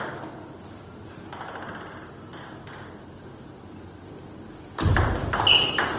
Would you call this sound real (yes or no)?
yes